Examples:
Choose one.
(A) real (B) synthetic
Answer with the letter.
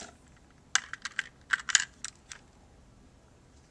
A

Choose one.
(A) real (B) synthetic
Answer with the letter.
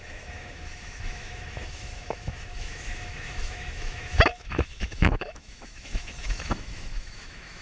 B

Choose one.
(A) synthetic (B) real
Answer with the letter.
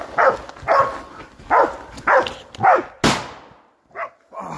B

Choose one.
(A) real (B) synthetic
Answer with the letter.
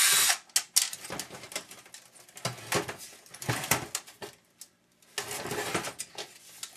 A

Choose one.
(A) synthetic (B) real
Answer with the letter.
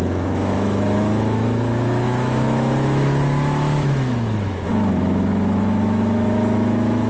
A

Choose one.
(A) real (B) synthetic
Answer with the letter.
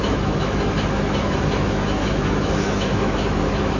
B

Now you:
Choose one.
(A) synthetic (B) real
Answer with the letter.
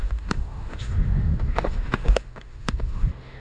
A